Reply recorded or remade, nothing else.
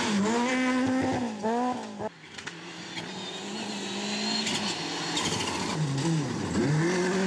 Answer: recorded